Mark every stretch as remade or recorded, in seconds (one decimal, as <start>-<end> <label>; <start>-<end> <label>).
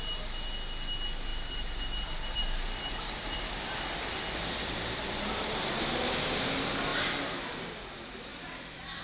0.0-1.3 recorded; 1.3-5.8 remade; 5.8-9.0 recorded